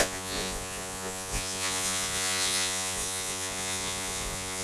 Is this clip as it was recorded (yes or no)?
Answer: no